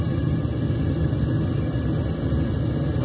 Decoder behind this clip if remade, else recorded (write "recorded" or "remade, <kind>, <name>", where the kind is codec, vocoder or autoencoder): recorded